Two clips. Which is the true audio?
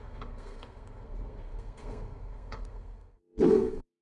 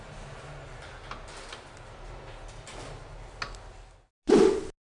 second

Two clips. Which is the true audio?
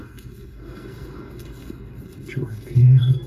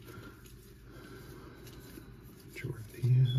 second